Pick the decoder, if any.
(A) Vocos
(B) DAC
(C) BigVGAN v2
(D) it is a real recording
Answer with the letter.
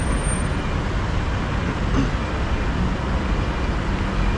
D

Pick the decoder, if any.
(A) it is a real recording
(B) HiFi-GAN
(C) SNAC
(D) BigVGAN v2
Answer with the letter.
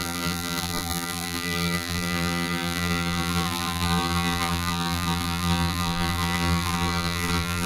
D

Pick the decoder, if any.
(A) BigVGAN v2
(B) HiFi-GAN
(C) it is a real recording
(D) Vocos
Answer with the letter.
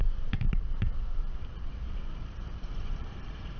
A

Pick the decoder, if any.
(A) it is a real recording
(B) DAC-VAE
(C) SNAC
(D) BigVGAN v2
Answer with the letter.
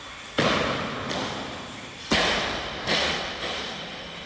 A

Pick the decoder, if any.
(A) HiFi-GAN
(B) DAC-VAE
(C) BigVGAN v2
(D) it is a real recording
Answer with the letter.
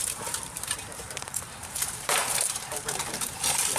C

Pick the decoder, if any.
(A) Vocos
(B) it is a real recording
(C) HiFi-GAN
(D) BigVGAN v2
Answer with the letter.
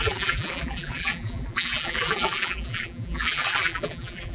D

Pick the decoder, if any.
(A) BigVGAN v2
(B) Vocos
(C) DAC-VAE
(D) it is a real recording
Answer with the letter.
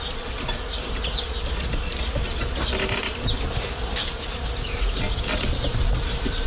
D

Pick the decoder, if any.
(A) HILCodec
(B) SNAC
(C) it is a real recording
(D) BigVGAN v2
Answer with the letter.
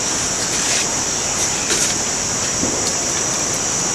C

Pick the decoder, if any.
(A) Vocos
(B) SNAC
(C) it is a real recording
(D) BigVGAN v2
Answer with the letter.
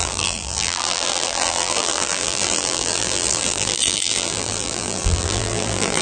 D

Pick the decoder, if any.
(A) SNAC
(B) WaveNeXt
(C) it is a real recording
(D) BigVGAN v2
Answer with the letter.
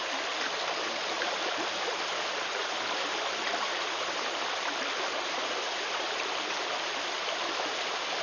C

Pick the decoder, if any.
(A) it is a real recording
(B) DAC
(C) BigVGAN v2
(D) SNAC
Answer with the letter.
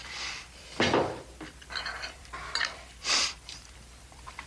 C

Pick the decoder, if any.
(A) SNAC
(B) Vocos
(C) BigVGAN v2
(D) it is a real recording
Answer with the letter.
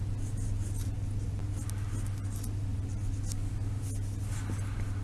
D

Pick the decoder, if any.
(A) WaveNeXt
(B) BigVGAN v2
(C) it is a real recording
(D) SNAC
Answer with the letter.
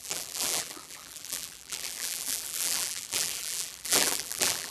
B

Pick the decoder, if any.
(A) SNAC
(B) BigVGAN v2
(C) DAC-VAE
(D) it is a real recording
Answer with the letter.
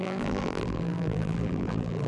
B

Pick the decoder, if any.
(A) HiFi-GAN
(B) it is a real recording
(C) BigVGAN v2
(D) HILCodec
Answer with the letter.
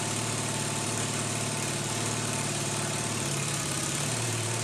C